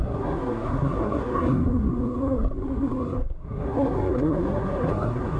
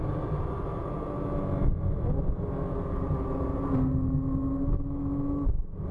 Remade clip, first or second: first